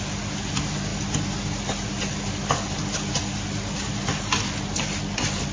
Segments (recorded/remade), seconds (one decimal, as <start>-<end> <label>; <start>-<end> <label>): 0.0-5.5 recorded